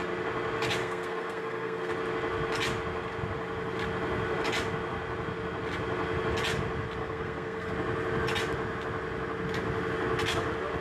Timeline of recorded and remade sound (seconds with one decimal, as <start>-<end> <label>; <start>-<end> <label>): 0.0-0.8 recorded; 0.8-1.9 remade; 1.9-7.0 recorded; 7.0-7.7 remade; 7.7-10.8 recorded